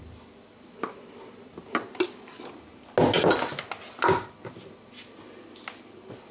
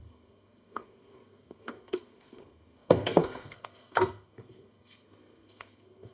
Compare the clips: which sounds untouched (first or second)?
first